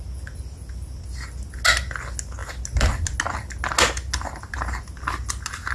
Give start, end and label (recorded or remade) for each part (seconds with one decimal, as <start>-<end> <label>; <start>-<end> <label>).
0.0-5.7 recorded